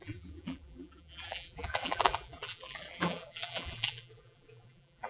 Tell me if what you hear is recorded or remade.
remade